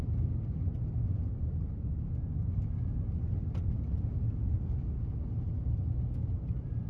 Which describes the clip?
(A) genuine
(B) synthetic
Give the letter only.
A